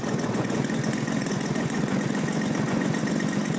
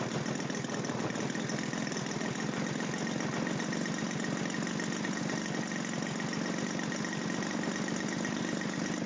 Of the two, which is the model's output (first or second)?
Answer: first